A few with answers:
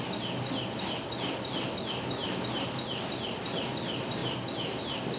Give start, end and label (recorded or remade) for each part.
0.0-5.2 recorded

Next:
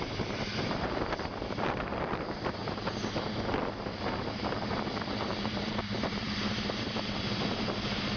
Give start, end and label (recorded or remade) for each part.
0.0-8.2 remade

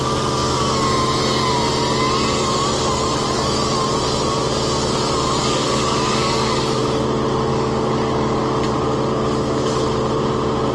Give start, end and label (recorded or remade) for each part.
0.0-5.4 recorded; 5.4-6.8 remade; 6.8-7.5 recorded; 7.5-8.4 remade; 8.4-10.7 recorded

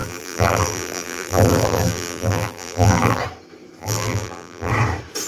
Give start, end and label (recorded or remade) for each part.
0.0-3.2 remade; 3.2-3.8 recorded; 3.8-4.7 remade; 4.7-5.3 recorded